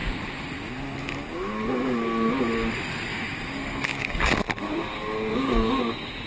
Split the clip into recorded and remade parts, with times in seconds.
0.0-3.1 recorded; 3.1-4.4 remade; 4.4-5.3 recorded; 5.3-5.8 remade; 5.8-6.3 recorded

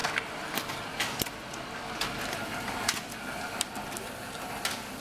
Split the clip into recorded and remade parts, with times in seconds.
0.0-5.0 recorded

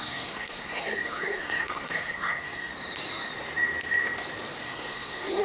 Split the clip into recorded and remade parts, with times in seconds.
0.0-2.7 remade; 2.7-4.6 recorded; 4.6-5.4 remade

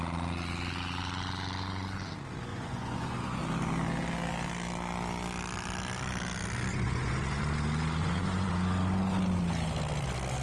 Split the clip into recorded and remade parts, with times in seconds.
0.0-2.5 recorded; 2.5-3.4 remade; 3.4-6.7 recorded; 6.7-7.4 remade; 7.4-8.0 recorded; 8.0-8.5 remade; 8.5-10.4 recorded

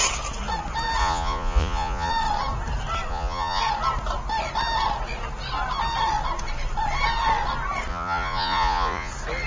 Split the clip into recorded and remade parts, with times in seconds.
0.0-1.0 recorded; 1.0-2.1 remade; 2.1-3.1 recorded; 3.1-3.6 remade; 3.6-7.9 recorded; 7.9-9.1 remade; 9.1-9.5 recorded